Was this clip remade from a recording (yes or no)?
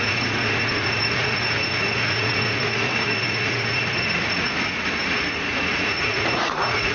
yes